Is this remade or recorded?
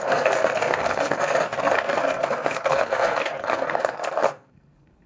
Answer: remade